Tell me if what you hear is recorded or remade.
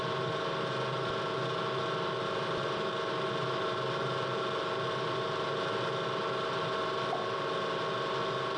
recorded